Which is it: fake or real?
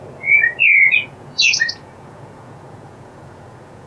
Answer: fake